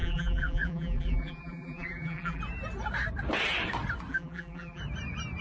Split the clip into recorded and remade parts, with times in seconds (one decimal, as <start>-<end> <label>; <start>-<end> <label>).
0.0-2.4 remade; 2.4-4.1 recorded; 4.1-4.8 remade; 4.8-5.4 recorded